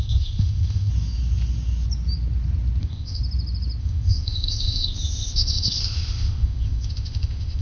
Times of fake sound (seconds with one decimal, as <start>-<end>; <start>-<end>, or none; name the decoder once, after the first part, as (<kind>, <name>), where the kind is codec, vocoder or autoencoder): 0.0-0.9 (codec, ZipCodec); 2.8-3.2; 3.8-7.6

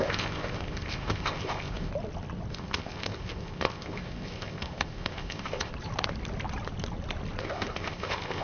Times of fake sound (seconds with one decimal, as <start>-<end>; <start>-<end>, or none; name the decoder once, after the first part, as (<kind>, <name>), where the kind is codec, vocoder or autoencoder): 0.0-1.9 (codec, ZipCodec); 2.5-5.7; 7.4-8.4

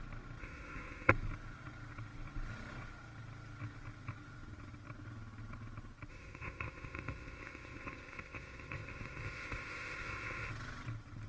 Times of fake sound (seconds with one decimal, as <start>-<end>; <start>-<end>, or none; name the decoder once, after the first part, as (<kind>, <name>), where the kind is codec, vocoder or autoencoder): 0.4-1.1 (codec, ZipCodec); 6.1-10.5

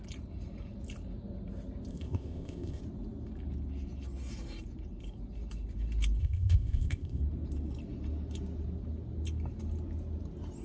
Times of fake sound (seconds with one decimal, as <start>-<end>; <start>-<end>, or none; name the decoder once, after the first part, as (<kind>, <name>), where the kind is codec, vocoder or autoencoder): 1.9-2.8 (codec, ZipCodec); 6.2-7.2

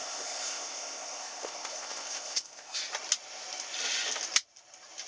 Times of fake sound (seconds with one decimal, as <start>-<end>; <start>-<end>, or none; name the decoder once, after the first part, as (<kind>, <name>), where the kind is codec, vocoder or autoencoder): 0.0-2.8 (codec, ZipCodec)

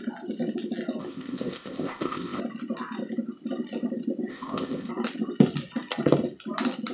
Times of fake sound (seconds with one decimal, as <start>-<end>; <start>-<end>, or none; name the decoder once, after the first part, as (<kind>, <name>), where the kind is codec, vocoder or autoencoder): 1.0-2.4 (codec, ZipCodec); 4.3-4.9